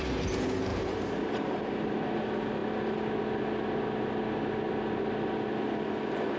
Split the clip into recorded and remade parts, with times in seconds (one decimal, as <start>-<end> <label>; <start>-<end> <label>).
0.0-0.7 recorded; 0.7-2.2 remade; 2.2-6.4 recorded